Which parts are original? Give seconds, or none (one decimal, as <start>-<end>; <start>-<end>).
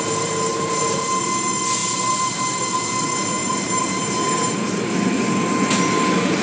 0.0-0.5; 1.3-1.8; 2.6-3.4; 4.8-6.4